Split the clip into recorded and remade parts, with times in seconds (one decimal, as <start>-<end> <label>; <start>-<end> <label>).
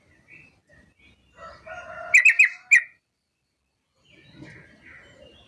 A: 0.0-5.5 recorded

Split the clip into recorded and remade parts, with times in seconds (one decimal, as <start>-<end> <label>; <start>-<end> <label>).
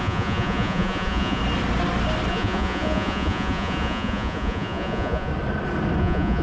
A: 0.0-1.4 remade; 1.4-2.3 recorded; 2.3-5.3 remade; 5.3-6.0 recorded; 6.0-6.4 remade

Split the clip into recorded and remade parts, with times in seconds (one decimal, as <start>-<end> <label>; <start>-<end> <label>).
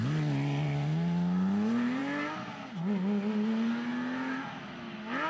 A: 0.0-5.3 recorded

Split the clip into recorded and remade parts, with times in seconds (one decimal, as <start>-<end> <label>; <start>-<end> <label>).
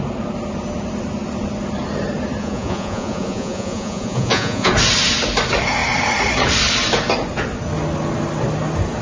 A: 0.0-2.4 recorded; 2.4-4.7 remade; 4.7-9.0 recorded